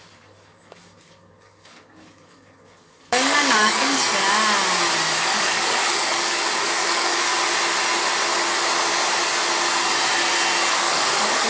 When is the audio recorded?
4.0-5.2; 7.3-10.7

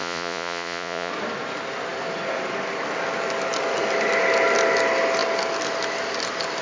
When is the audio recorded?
1.1-6.6

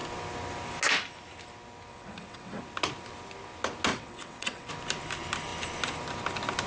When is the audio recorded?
0.0-1.9; 2.6-3.9; 4.7-6.7

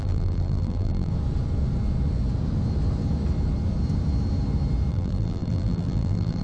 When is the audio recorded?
1.1-4.9

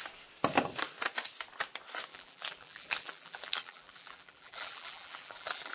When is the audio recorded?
0.0-2.1

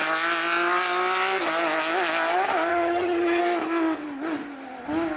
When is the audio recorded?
0.0-2.7; 3.4-5.2